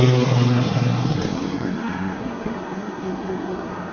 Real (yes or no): no